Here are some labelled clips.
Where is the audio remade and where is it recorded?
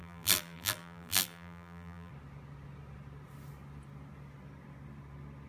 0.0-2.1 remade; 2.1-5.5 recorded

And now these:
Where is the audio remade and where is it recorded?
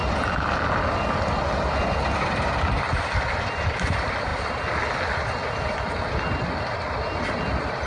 0.0-7.9 recorded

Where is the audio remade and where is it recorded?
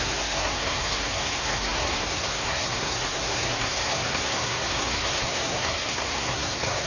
0.0-6.9 remade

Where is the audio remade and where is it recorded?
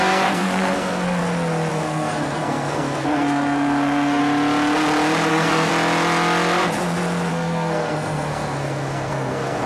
0.0-1.2 remade; 1.2-1.7 recorded; 1.7-4.2 remade; 4.2-5.3 recorded; 5.3-5.7 remade; 5.7-7.3 recorded; 7.3-9.7 remade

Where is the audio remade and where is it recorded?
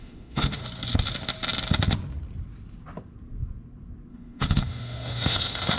0.0-0.6 remade; 0.6-4.1 recorded; 4.1-5.8 remade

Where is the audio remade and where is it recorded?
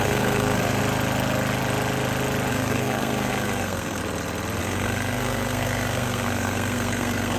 0.0-0.8 remade; 0.8-2.5 recorded; 2.5-4.0 remade; 4.0-4.6 recorded; 4.6-7.4 remade